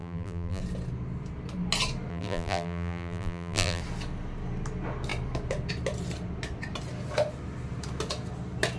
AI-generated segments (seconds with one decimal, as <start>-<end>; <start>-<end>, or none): 0.0-0.6; 2.1-3.8